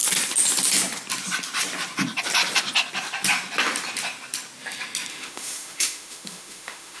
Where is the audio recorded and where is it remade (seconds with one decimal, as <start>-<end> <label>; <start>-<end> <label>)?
0.0-5.1 recorded; 5.1-7.0 remade